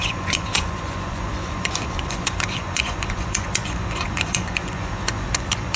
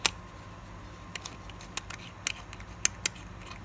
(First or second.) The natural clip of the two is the second